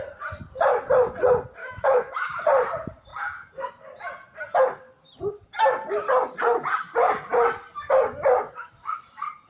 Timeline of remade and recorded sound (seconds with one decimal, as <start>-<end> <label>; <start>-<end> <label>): 0.0-1.6 recorded; 1.6-2.4 remade; 2.4-9.5 recorded

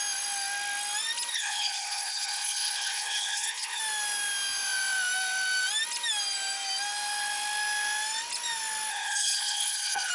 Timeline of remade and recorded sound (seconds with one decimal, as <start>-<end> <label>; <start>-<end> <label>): 0.0-1.3 recorded; 1.3-3.8 remade; 3.8-8.9 recorded; 8.9-10.1 remade

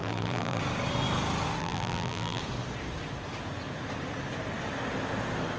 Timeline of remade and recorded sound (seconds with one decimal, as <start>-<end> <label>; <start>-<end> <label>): 0.0-0.6 remade; 0.6-1.6 recorded; 1.6-2.4 remade; 2.4-5.6 recorded